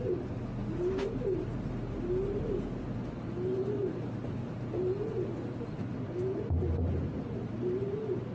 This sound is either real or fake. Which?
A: real